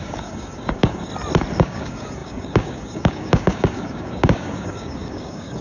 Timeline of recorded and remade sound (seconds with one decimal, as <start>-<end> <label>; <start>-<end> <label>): 0.0-1.1 remade; 1.1-1.6 recorded; 1.6-5.6 remade